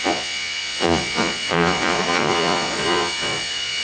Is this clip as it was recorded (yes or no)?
no